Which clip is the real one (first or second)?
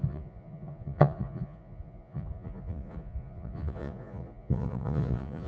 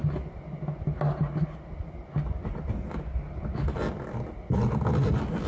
second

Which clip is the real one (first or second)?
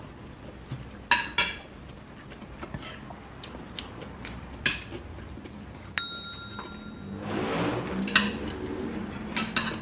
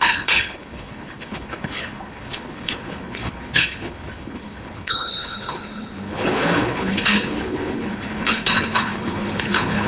first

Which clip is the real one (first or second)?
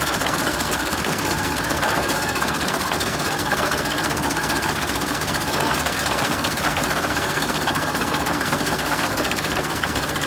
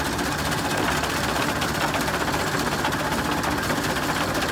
second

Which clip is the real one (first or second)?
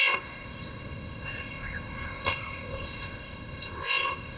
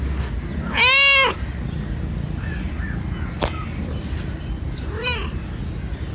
second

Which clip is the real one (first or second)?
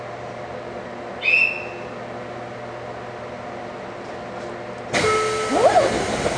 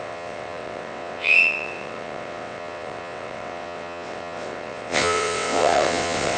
first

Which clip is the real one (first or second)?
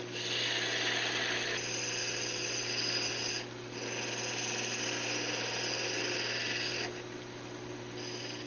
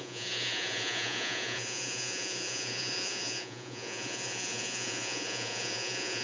first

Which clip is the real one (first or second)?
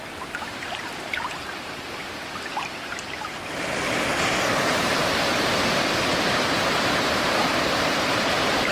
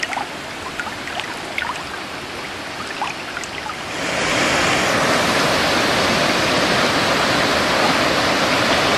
second